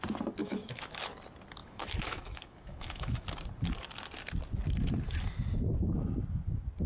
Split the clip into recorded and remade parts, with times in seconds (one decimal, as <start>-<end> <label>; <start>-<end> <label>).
0.0-0.4 recorded; 0.4-1.0 remade; 1.0-1.6 recorded; 1.6-3.2 remade; 3.2-6.9 recorded